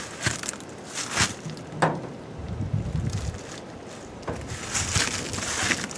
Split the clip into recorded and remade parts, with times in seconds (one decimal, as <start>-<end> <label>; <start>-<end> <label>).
0.0-6.0 recorded

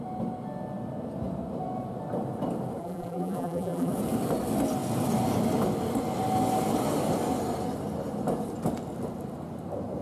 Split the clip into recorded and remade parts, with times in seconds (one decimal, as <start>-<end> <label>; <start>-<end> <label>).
0.0-2.8 recorded; 2.8-3.9 remade; 3.9-10.0 recorded

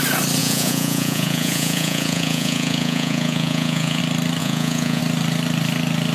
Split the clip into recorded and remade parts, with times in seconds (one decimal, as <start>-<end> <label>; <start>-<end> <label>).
0.0-0.4 recorded; 0.4-4.0 remade; 4.0-4.4 recorded; 4.4-5.0 remade; 5.0-6.1 recorded

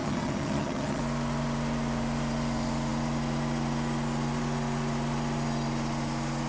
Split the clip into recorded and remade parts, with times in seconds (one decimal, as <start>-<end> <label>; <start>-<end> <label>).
0.0-1.0 remade; 1.0-6.5 recorded

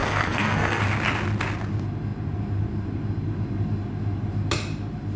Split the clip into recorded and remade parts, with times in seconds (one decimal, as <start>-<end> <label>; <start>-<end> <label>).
0.0-0.8 remade; 0.8-5.2 recorded

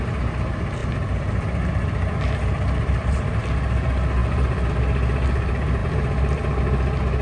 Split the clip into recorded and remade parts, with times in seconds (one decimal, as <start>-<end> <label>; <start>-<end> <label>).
0.0-0.8 recorded; 0.8-3.4 remade; 3.4-4.2 recorded; 4.2-4.7 remade; 4.7-5.8 recorded; 5.8-6.6 remade; 6.6-7.2 recorded

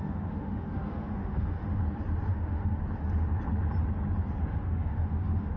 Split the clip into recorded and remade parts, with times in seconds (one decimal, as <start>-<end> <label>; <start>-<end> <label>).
0.0-1.8 remade; 1.8-2.3 recorded; 2.3-2.8 remade; 2.8-4.4 recorded; 4.4-5.6 remade

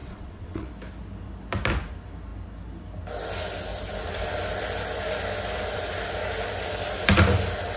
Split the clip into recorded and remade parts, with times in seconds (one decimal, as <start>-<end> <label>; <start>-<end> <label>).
0.0-0.7 remade; 0.7-7.8 recorded